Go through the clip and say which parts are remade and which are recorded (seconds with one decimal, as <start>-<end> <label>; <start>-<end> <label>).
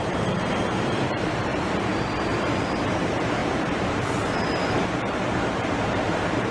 0.0-1.5 remade; 1.5-3.0 recorded; 3.0-6.5 remade